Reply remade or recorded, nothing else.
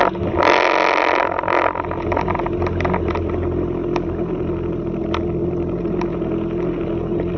recorded